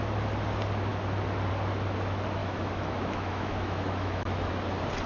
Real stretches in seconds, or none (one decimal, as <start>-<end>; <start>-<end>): 0.0-2.4; 4.5-5.1